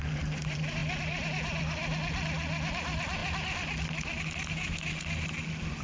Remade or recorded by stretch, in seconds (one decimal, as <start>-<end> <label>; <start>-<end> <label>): 0.0-5.8 recorded